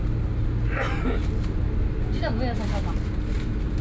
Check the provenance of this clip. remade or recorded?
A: recorded